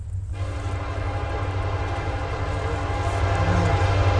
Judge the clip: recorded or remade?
recorded